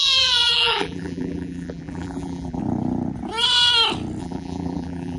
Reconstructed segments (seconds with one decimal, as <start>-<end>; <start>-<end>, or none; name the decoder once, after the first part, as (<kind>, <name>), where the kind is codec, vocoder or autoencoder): 0.0-2.6 (vocoder, BigVGAN v2); 4.2-5.2